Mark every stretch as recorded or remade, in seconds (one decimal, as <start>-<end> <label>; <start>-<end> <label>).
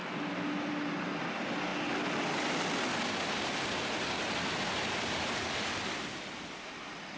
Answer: 0.0-7.2 recorded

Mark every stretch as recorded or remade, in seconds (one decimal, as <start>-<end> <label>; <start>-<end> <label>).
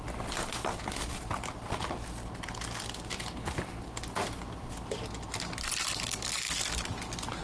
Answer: 0.0-7.4 recorded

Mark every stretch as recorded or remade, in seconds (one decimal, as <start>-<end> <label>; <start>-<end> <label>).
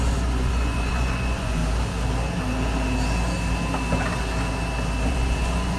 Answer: 0.0-1.6 remade; 1.6-5.1 recorded; 5.1-5.8 remade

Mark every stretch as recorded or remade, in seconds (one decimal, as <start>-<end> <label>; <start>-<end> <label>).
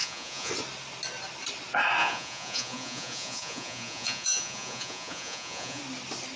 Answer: 0.0-0.5 remade; 0.5-2.0 recorded; 2.0-5.8 remade; 5.8-6.4 recorded